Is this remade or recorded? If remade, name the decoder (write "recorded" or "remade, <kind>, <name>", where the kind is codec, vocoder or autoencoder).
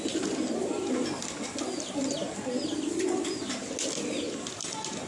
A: recorded